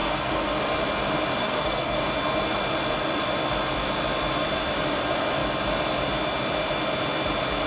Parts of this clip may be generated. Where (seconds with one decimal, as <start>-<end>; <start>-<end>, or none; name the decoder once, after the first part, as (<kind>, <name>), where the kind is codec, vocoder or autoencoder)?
0.0-0.6 (codec, SNAC); 1.4-2.0